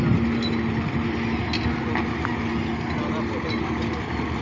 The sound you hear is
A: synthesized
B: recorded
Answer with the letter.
B